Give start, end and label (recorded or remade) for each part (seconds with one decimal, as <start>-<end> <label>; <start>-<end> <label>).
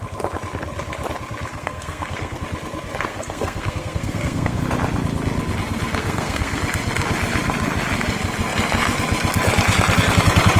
0.0-1.5 recorded; 1.5-2.4 remade; 2.4-3.1 recorded; 3.1-4.6 remade; 4.6-6.0 recorded; 6.0-6.6 remade; 6.6-10.6 recorded